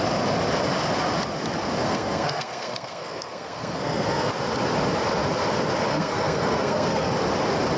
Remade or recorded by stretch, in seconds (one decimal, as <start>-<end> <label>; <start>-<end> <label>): 0.0-1.8 recorded; 1.8-4.3 remade; 4.3-5.9 recorded; 5.9-7.1 remade; 7.1-7.8 recorded